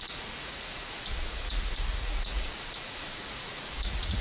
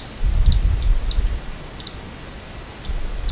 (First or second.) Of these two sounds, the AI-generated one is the first